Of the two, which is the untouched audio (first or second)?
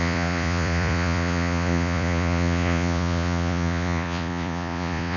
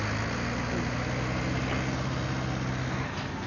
second